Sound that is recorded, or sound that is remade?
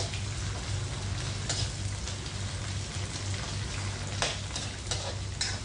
recorded